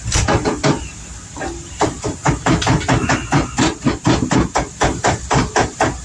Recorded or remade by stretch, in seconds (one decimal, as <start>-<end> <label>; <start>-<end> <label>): 0.0-2.2 remade; 2.2-3.6 recorded; 3.6-6.0 remade